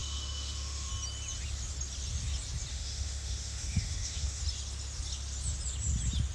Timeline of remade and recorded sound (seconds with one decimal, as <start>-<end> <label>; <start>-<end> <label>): 0.0-0.9 remade; 0.9-2.7 recorded; 2.7-4.4 remade; 4.4-6.3 recorded